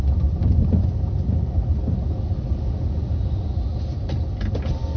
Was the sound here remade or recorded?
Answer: recorded